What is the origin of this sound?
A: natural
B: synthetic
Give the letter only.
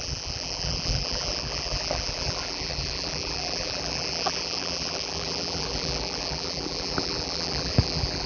B